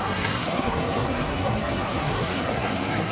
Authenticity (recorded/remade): remade